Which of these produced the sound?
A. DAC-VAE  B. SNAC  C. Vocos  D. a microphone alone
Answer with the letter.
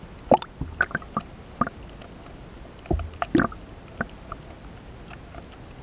D